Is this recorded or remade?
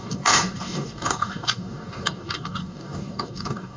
remade